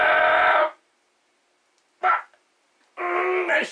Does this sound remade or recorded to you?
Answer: recorded